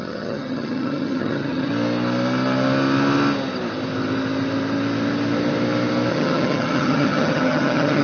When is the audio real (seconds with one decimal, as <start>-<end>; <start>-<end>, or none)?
1.7-6.1